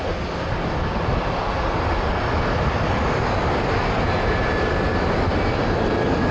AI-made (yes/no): no